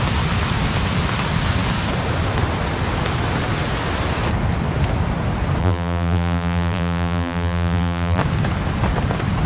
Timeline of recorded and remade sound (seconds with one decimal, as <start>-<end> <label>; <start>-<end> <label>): 0.0-5.6 recorded; 5.6-8.2 remade; 8.2-9.5 recorded